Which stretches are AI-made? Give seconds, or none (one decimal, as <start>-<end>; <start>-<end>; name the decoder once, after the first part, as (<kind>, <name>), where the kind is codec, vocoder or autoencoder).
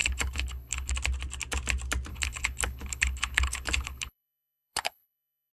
0.0-0.9 (codec, HILCodec); 2.1-5.5